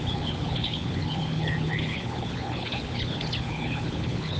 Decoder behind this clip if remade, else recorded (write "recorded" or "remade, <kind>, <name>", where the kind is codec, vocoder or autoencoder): remade, codec, HILCodec